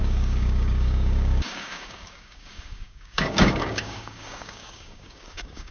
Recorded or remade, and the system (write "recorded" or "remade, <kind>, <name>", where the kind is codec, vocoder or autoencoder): remade, codec, DAC